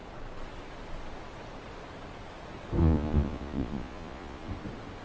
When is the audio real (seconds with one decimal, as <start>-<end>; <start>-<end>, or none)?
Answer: 0.0-2.8; 4.5-5.0